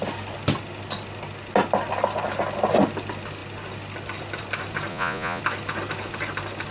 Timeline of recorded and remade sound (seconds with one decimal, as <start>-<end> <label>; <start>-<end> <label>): 0.0-4.9 recorded; 4.9-5.4 remade; 5.4-6.7 recorded